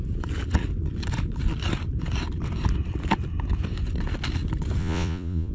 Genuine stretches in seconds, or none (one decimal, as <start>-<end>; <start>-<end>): 0.0-4.8